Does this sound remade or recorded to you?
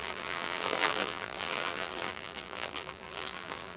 remade